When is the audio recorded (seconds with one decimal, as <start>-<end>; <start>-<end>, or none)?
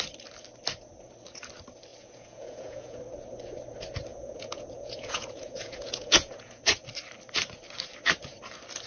0.0-1.9; 3.0-4.1; 6.6-8.9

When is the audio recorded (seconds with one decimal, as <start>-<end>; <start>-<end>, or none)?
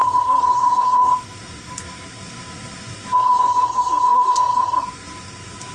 none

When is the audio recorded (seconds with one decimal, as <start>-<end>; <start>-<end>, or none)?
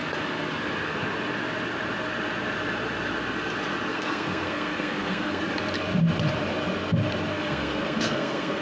0.0-3.9; 5.4-7.3